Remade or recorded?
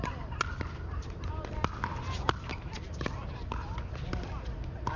recorded